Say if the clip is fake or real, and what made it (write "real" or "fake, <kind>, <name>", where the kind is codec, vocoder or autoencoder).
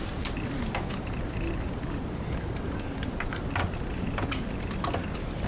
real